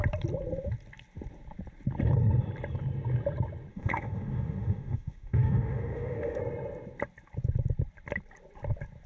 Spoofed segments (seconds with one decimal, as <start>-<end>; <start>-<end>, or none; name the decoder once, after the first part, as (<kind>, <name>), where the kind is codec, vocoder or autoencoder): 3.7-6.4 (autoencoder, DAC-VAE)